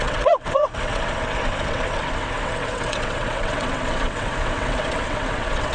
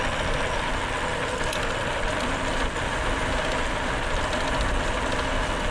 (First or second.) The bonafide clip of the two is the second